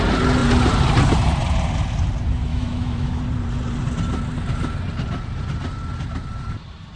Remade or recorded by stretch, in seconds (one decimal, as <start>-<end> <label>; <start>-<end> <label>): 0.0-2.5 recorded; 2.5-3.2 remade; 3.2-7.0 recorded